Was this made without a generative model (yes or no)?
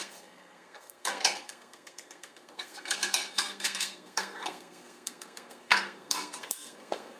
no